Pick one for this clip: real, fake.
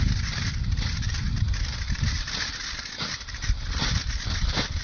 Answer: real